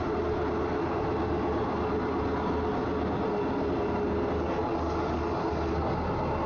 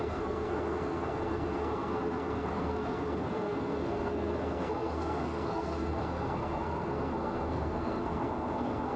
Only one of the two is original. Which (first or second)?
first